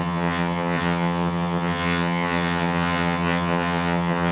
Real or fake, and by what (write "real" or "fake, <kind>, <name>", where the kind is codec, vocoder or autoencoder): fake, vocoder, HiFi-GAN